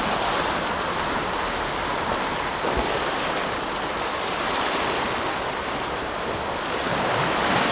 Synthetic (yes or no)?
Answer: no